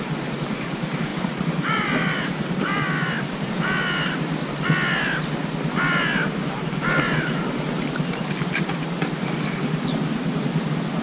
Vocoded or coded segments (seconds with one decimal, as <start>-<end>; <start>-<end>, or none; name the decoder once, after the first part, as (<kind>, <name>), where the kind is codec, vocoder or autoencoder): 1.1-3.5 (vocoder, BigVGAN v2)